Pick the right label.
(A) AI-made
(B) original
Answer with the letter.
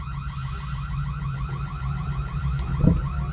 B